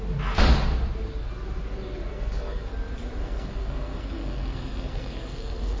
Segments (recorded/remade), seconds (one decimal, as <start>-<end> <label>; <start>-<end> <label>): 0.0-2.1 recorded; 2.1-2.7 remade; 2.7-3.2 recorded; 3.2-5.8 remade